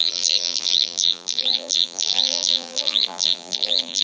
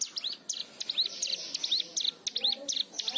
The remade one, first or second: first